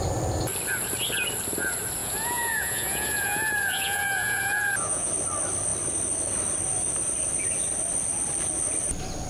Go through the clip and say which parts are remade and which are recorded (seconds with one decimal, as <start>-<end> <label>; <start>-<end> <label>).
0.0-2.0 recorded; 2.0-5.1 remade; 5.1-9.3 recorded